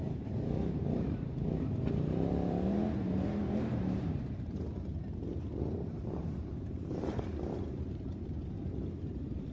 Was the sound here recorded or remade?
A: remade